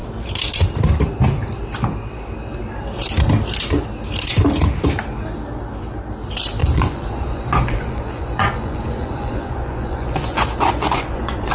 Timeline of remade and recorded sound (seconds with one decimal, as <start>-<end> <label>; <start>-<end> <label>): 0.0-6.6 recorded; 6.6-11.5 remade